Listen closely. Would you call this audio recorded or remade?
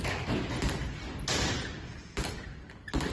recorded